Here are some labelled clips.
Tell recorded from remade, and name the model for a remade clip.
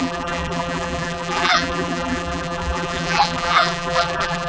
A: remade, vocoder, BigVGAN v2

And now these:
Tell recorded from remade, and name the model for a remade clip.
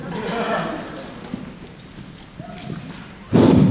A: recorded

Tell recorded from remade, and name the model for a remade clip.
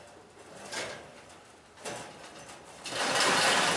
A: remade, vocoder, BigVGAN v2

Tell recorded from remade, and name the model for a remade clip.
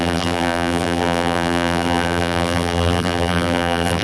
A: remade, vocoder, BigVGAN v2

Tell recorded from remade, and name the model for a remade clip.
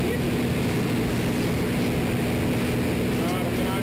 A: recorded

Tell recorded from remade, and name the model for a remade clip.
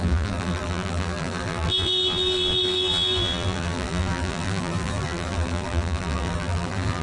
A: remade, vocoder, BigVGAN v2